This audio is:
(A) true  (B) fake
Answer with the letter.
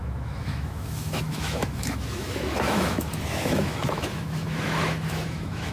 B